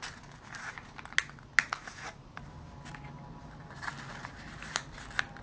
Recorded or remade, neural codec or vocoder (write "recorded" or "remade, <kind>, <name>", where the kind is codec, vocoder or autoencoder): recorded